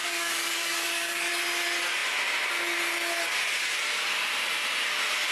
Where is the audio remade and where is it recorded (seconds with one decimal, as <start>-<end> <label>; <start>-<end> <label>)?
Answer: 0.0-1.3 remade; 1.3-5.3 recorded